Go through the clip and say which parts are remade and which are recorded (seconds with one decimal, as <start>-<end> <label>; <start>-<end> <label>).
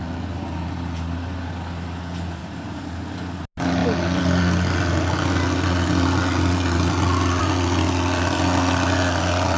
0.0-2.4 recorded; 2.4-2.9 remade; 2.9-9.6 recorded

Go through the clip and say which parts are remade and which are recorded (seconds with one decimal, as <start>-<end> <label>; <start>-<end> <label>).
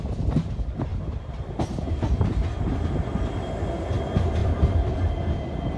0.0-0.9 recorded; 0.9-3.1 remade; 3.1-4.4 recorded; 4.4-5.1 remade; 5.1-5.8 recorded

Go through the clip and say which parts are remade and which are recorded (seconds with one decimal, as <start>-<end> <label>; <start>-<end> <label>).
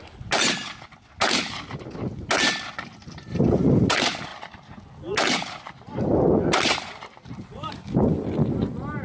0.0-3.3 recorded; 3.3-3.9 remade; 3.9-9.0 recorded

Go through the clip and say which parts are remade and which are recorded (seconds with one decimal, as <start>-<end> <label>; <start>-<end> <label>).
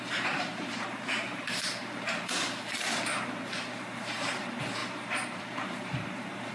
0.0-6.5 remade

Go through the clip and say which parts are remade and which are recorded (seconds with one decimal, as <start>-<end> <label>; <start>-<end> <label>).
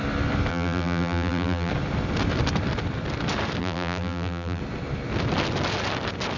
0.0-0.5 recorded; 0.5-1.7 remade; 1.7-3.6 recorded; 3.6-4.6 remade; 4.6-6.4 recorded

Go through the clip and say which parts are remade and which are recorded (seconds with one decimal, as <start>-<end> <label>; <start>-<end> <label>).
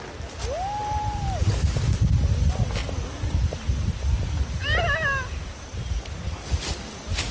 0.0-0.8 recorded; 0.8-1.8 remade; 1.8-7.3 recorded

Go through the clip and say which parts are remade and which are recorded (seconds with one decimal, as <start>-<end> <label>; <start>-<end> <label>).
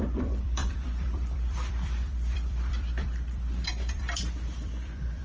0.0-5.2 remade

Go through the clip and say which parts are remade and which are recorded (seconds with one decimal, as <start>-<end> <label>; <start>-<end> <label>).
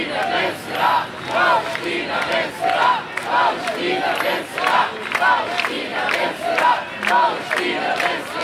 0.0-5.9 recorded; 5.9-7.5 remade; 7.5-8.4 recorded